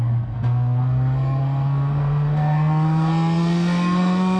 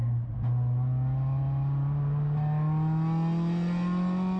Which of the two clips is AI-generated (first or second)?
first